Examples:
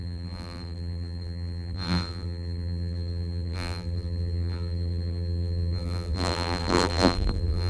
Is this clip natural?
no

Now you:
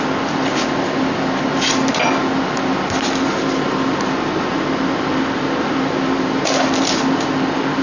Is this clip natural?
yes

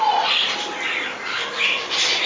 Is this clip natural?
yes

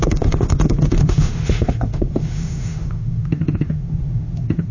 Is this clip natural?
no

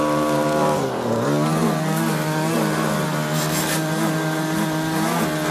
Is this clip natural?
yes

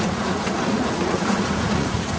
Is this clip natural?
no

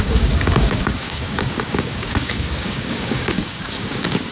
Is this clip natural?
no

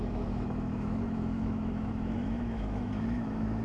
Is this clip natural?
no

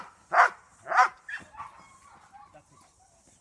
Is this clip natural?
yes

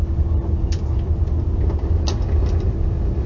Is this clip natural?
yes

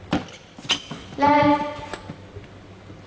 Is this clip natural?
yes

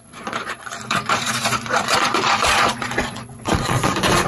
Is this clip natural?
no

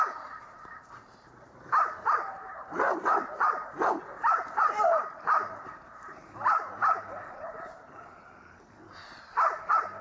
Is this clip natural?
no